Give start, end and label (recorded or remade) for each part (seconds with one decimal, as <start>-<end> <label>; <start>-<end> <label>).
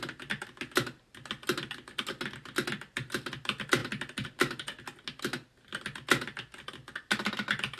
0.0-7.8 recorded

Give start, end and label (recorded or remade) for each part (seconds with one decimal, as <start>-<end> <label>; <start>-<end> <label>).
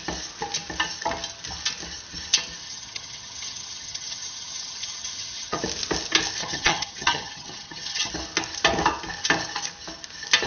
0.0-2.6 recorded; 2.6-5.6 remade; 5.6-6.4 recorded; 6.4-8.1 remade; 8.1-10.5 recorded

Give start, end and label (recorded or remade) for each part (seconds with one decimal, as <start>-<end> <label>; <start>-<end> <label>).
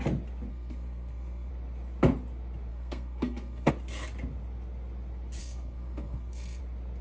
0.0-0.5 recorded; 0.5-1.5 remade; 1.5-2.7 recorded; 2.7-3.7 remade; 3.7-5.4 recorded; 5.4-6.6 remade; 6.6-7.0 recorded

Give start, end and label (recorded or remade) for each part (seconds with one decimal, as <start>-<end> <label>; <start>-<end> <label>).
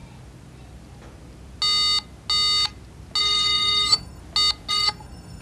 0.0-3.2 recorded; 3.2-4.2 remade; 4.2-4.7 recorded; 4.7-5.4 remade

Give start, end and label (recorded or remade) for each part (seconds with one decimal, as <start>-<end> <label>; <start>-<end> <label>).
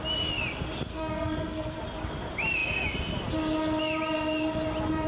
0.0-0.9 recorded; 0.9-1.8 remade; 1.8-5.1 recorded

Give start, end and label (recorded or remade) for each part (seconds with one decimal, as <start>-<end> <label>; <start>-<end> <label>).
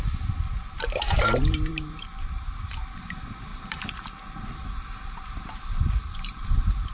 0.0-3.5 remade; 3.5-5.1 recorded; 5.1-6.9 remade